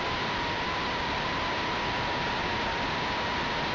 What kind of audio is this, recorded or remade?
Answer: recorded